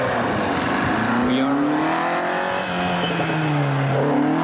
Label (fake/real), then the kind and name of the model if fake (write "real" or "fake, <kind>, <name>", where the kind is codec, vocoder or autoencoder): real